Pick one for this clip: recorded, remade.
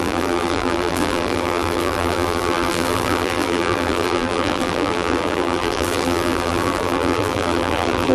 remade